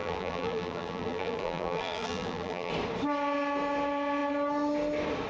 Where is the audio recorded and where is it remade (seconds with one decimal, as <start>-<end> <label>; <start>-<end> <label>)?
0.0-2.7 remade; 2.7-5.3 recorded